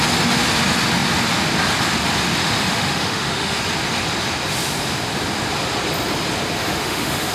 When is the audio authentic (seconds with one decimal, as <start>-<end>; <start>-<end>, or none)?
0.0-2.4; 3.6-6.6